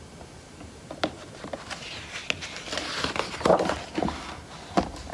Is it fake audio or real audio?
fake